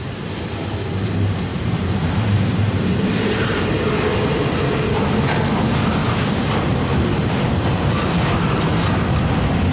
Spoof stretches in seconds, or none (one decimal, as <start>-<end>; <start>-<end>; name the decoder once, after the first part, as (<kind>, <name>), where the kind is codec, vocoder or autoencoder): 1.5-3.8 (vocoder, BigVGAN v2); 6.0-8.7